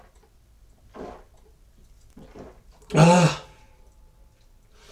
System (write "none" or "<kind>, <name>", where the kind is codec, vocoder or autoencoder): none